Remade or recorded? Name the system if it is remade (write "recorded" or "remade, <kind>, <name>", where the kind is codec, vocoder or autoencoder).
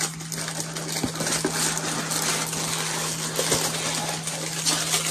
recorded